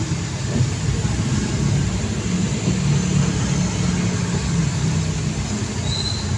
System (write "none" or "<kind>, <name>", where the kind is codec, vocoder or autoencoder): none